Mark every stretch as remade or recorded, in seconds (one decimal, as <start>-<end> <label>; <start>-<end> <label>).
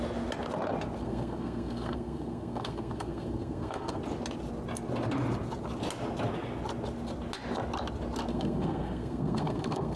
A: 0.0-1.0 recorded; 1.0-4.0 remade; 4.0-8.3 recorded; 8.3-10.0 remade